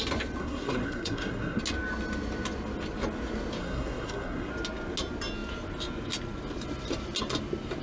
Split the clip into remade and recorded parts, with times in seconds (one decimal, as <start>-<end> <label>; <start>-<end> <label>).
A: 0.0-0.4 recorded; 0.4-1.6 remade; 1.6-3.6 recorded; 3.6-4.5 remade; 4.5-7.8 recorded